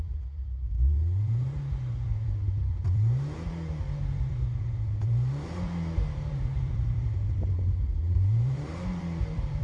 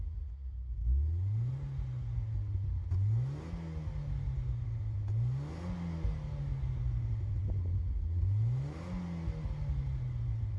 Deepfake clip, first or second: first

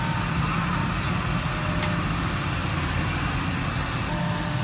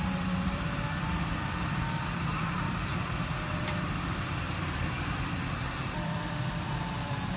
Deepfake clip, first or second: second